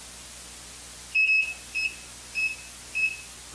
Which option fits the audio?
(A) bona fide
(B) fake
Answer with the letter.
A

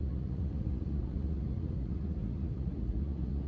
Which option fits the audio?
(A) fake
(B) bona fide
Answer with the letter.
A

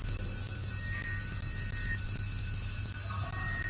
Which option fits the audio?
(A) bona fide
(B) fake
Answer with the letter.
A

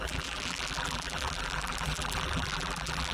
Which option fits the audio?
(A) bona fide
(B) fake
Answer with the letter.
B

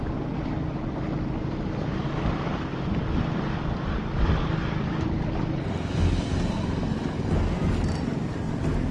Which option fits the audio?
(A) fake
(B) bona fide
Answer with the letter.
B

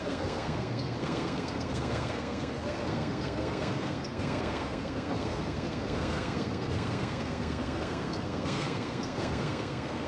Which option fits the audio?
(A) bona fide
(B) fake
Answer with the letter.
B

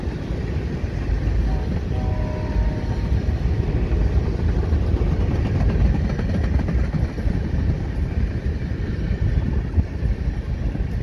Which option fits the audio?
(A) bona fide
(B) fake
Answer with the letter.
A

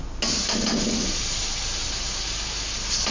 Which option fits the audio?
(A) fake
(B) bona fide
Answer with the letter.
B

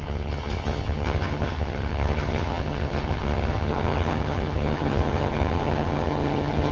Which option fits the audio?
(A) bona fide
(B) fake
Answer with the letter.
B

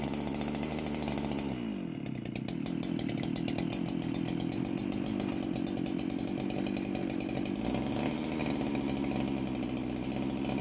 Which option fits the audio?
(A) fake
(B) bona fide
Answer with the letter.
B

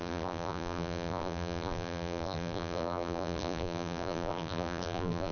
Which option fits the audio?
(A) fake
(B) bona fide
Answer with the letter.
A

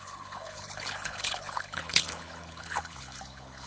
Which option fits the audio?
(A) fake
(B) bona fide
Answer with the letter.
A